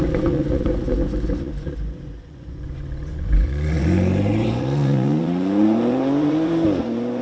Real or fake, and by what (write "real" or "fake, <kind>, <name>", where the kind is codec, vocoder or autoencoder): fake, vocoder, Vocos